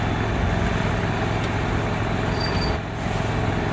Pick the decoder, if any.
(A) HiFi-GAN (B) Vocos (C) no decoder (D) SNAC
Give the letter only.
C